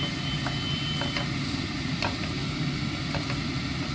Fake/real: real